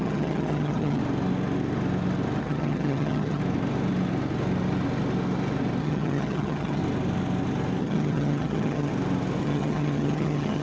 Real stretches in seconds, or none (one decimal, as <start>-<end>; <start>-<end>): 1.0-2.4; 3.4-5.8; 6.8-7.8; 8.9-9.4